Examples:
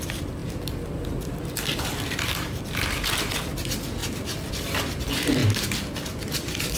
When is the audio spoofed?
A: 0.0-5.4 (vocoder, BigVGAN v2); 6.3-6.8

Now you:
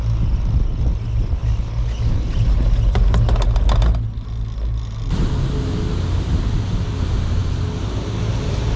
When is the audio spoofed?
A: none

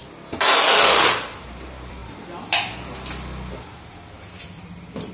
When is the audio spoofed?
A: 1.2-2.0 (vocoder, BigVGAN v2); 4.4-5.1

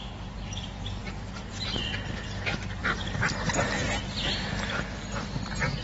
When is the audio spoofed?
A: 1.0-1.5 (vocoder, BigVGAN v2)

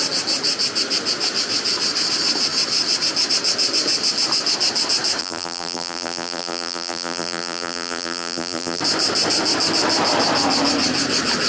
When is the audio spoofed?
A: 5.2-8.8 (vocoder, BigVGAN v2)

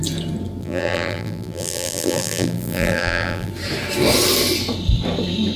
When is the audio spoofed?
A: 0.6-3.5 (vocoder, BigVGAN v2)

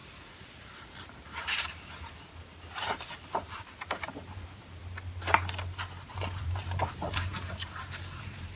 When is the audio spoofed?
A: 2.7-4.8 (vocoder, BigVGAN v2); 5.8-7.3; 8.2-8.6